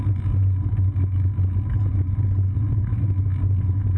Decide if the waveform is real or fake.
real